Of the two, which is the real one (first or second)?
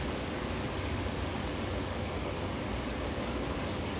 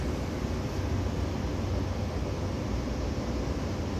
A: second